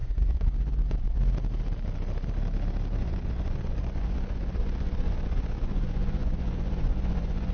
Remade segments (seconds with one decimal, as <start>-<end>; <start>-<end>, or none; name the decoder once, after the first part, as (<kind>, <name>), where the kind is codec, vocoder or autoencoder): 0.0-1.2 (vocoder, Vocos); 3.0-7.5